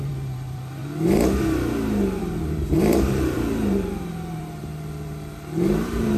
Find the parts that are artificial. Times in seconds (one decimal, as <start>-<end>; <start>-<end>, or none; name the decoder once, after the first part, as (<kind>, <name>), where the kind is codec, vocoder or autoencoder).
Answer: 0.0-0.8 (vocoder, BigVGAN v2); 2.2-6.2